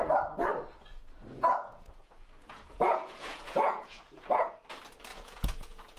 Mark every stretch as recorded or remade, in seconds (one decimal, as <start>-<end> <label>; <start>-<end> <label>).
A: 0.0-0.9 recorded; 0.9-4.5 remade; 4.5-5.1 recorded; 5.1-6.0 remade